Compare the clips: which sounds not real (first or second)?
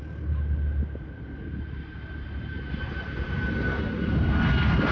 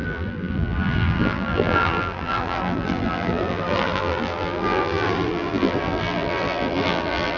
second